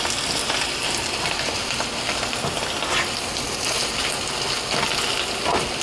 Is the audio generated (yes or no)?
no